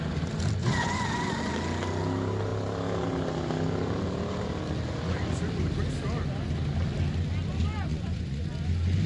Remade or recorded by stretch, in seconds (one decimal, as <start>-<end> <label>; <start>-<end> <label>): 0.0-0.6 recorded; 0.6-1.4 remade; 1.4-7.9 recorded; 7.9-8.4 remade; 8.4-9.1 recorded